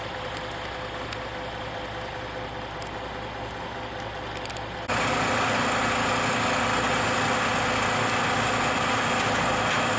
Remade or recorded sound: recorded